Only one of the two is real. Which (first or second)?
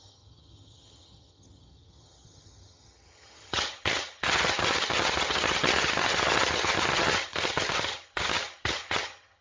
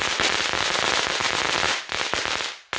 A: second